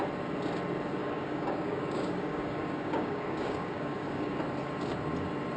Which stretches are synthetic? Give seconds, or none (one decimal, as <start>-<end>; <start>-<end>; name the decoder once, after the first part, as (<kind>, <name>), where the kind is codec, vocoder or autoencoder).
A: 1.0-4.4 (codec, DAC)